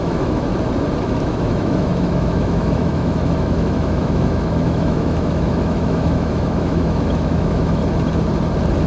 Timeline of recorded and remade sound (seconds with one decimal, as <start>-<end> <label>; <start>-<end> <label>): 0.0-0.5 remade; 0.5-1.0 recorded; 1.0-7.8 remade; 7.8-8.9 recorded